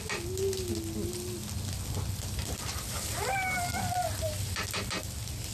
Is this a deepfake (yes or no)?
no